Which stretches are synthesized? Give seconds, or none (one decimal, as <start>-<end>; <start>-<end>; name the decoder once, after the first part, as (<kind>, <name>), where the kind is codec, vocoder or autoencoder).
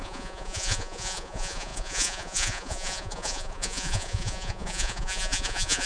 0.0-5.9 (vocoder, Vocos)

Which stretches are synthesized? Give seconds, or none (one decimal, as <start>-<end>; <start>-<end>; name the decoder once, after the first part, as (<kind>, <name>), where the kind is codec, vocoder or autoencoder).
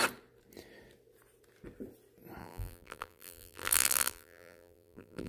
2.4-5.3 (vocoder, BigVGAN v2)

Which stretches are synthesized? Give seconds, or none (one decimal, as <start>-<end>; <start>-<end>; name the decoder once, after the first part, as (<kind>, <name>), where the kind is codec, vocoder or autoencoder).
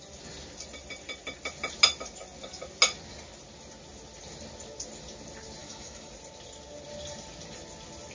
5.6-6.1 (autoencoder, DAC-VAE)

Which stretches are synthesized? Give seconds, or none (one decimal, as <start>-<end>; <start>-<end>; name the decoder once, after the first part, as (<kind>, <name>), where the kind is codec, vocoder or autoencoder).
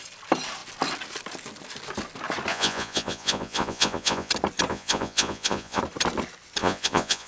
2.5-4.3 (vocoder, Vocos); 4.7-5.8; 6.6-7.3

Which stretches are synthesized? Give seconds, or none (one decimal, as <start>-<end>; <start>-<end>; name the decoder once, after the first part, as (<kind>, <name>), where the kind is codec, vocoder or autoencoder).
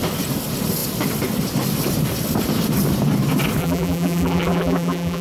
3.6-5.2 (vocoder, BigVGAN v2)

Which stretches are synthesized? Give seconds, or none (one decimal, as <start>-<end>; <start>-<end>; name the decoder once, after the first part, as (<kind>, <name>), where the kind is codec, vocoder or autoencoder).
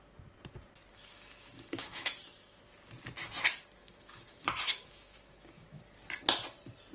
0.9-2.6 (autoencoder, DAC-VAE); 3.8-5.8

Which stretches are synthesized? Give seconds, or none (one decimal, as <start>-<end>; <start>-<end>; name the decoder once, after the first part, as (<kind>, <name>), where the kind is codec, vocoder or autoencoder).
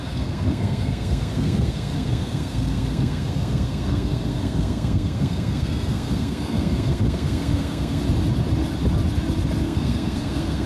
0.0-8.0 (codec, SNAC); 9.6-10.7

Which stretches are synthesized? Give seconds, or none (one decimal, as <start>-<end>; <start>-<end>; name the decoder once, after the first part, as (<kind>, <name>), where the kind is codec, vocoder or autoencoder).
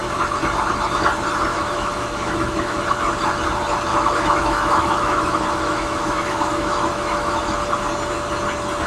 1.5-2.8 (autoencoder, DAC-VAE); 3.9-7.4